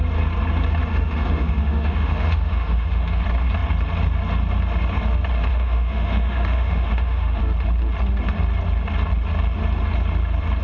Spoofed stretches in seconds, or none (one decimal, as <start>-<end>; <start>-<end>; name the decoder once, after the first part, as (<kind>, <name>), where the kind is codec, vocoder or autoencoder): 0.9-3.2 (autoencoder, DAC-VAE); 5.5-7.4